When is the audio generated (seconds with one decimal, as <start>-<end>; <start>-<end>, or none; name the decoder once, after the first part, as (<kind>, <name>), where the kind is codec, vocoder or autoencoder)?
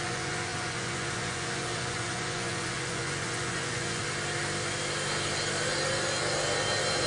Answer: 0.0-4.0 (vocoder, Vocos)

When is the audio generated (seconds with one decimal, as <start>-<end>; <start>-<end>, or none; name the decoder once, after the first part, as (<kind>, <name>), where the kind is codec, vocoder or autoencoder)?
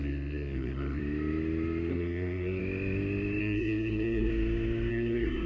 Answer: 0.0-1.0 (codec, SNAC); 1.9-2.6; 3.4-4.3; 4.9-5.5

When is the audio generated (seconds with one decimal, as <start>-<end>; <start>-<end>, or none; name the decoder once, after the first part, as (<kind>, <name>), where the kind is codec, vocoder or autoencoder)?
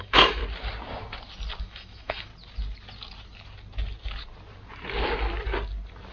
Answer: 0.0-0.4 (autoencoder, DAC-VAE); 1.6-2.3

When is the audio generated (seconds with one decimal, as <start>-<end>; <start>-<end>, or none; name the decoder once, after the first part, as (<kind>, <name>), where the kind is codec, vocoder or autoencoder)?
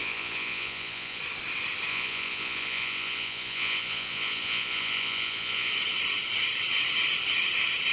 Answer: 0.0-1.2 (vocoder, Vocos); 1.9-5.7